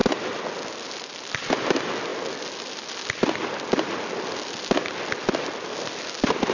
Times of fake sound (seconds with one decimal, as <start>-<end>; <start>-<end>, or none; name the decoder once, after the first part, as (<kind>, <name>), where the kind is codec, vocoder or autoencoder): none